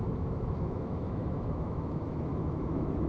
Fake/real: fake